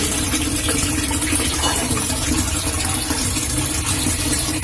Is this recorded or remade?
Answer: recorded